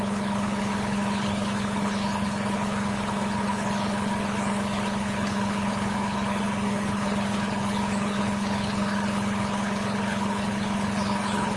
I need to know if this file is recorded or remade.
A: remade